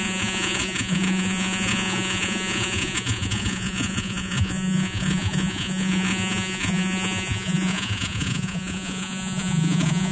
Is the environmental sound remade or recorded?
remade